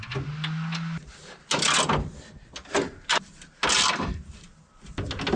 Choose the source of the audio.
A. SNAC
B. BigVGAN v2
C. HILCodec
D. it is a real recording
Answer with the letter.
D